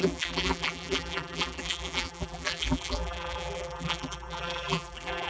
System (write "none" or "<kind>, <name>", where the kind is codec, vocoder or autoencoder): vocoder, BigVGAN v2